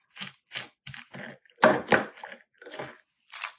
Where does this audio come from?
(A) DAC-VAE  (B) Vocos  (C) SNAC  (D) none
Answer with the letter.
D